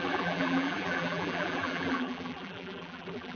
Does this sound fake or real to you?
fake